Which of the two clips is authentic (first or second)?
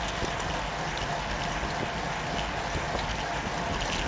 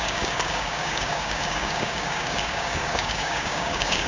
first